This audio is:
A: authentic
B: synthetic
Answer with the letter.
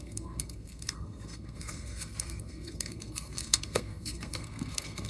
B